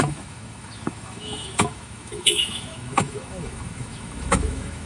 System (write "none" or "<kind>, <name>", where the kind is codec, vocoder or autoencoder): autoencoder, DAC-VAE